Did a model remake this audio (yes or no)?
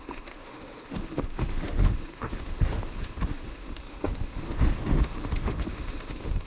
yes